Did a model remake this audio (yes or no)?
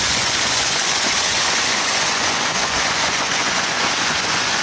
yes